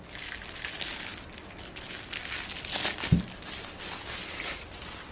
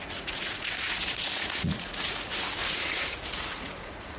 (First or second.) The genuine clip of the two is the first